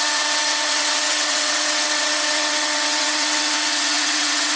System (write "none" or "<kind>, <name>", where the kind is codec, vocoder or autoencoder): vocoder, WaveNeXt